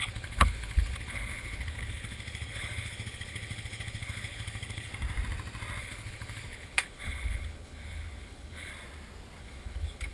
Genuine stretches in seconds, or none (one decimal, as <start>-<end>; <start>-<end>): 4.9-5.8; 8.7-9.4